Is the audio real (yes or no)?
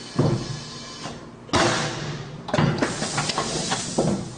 yes